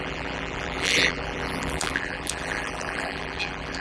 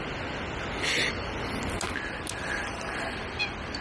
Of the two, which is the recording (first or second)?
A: second